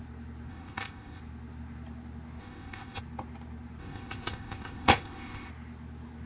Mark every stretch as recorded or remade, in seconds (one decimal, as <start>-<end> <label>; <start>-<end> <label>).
0.0-0.5 recorded; 0.5-1.2 remade; 1.2-2.4 recorded; 2.4-3.0 remade; 3.0-3.8 recorded; 3.8-5.5 remade; 5.5-6.3 recorded